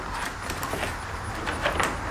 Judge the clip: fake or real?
real